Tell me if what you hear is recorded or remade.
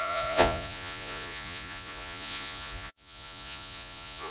remade